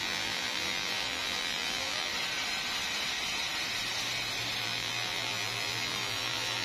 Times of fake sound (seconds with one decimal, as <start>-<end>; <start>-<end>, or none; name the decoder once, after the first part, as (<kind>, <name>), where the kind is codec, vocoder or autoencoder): 0.0-2.1 (vocoder, BigVGAN v2); 4.6-6.6